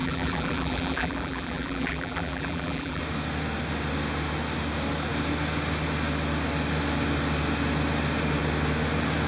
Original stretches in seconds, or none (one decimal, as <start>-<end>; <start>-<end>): 3.0-9.3